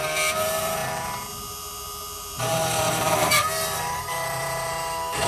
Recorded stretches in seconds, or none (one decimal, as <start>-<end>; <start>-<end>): none